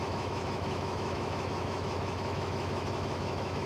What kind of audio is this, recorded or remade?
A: remade